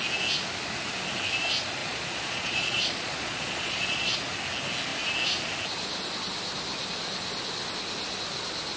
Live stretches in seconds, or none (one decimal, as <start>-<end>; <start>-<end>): 0.0-1.8; 4.2-8.8